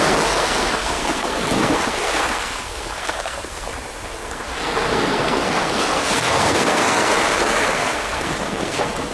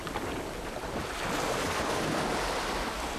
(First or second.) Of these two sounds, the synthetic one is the first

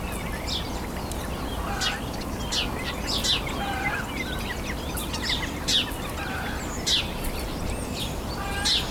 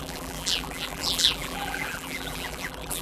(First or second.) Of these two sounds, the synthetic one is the second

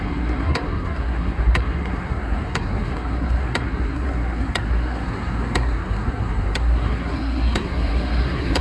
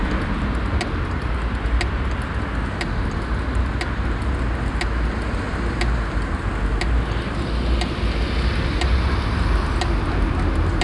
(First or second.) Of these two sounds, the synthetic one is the first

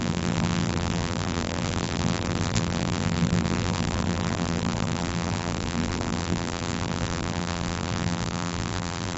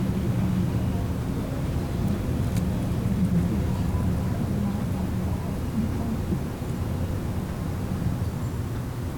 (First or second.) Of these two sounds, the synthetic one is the first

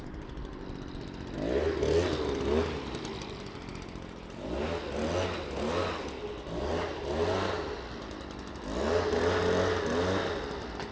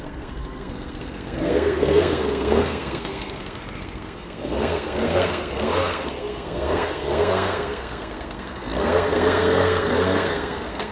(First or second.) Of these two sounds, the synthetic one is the second